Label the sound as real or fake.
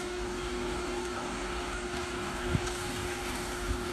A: fake